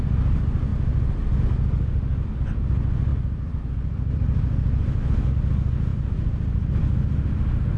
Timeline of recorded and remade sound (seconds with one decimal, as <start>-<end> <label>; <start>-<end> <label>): 0.0-3.1 recorded; 3.1-5.3 remade; 5.3-5.9 recorded; 5.9-7.8 remade